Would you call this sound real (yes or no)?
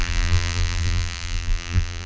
no